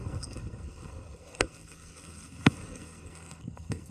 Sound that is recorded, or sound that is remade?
remade